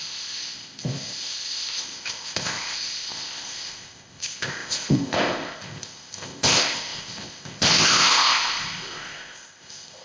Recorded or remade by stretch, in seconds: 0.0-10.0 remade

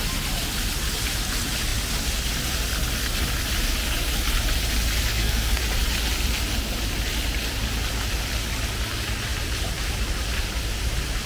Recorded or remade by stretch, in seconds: 0.0-5.1 recorded; 5.1-5.6 remade; 5.6-11.3 recorded

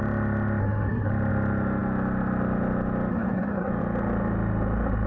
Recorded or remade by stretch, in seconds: 0.0-0.6 recorded; 0.6-1.1 remade; 1.1-3.1 recorded; 3.1-3.7 remade; 3.7-5.1 recorded

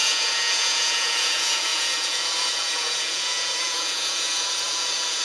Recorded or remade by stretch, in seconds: 0.0-5.2 remade

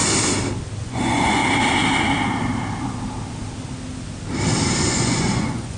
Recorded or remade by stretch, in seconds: 0.0-0.8 recorded; 0.8-1.4 remade; 1.4-4.9 recorded; 4.9-5.8 remade

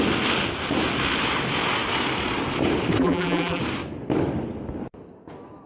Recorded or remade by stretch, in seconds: 0.0-3.0 recorded; 3.0-3.6 remade; 3.6-5.7 recorded

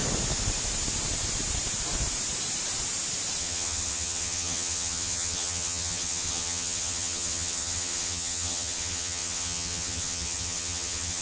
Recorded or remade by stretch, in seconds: 0.0-3.4 recorded; 3.4-11.2 remade

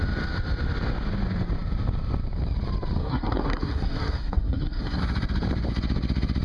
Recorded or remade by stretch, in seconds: 0.0-3.0 recorded; 3.0-5.0 remade; 5.0-6.4 recorded